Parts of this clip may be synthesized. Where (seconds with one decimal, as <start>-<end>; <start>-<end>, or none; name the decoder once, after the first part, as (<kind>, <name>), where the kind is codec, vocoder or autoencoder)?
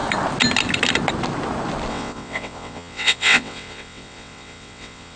1.9-5.2 (vocoder, WaveNeXt)